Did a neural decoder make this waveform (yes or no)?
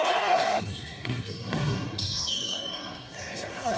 yes